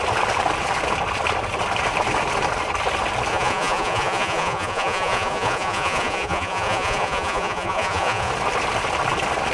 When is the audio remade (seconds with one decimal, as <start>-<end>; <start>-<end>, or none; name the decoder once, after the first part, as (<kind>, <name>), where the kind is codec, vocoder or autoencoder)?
3.3-8.3 (vocoder, Vocos)